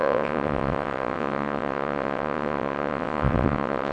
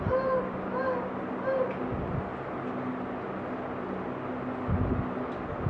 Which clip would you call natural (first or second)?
second